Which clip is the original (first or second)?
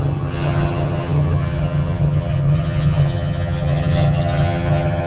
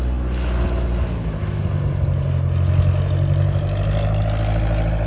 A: second